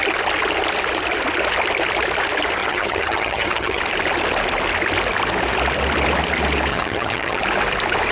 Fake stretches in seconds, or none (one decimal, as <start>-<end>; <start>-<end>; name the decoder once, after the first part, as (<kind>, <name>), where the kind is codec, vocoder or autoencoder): 2.6-3.8 (vocoder, HiFi-GAN); 6.7-7.4